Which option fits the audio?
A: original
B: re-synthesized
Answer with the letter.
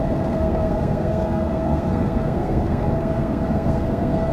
B